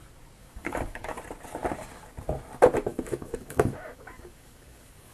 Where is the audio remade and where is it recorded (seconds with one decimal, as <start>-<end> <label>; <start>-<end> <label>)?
0.0-0.4 recorded; 0.4-1.2 remade; 1.2-2.9 recorded; 2.9-5.1 remade